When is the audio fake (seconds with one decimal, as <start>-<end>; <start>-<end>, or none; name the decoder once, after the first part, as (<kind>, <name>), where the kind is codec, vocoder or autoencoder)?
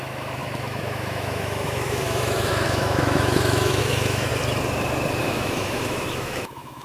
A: 0.0-4.3 (autoencoder, DAC-VAE); 5.2-6.8